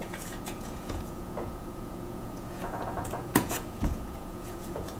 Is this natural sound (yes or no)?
no